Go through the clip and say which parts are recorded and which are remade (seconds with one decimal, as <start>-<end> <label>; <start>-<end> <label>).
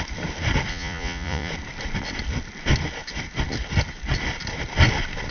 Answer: 0.0-0.7 recorded; 0.7-1.5 remade; 1.5-5.3 recorded